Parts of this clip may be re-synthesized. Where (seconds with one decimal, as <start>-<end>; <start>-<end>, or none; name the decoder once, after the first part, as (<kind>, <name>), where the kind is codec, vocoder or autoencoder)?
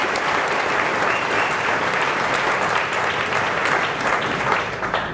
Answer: 0.0-3.1 (vocoder, BigVGAN v2)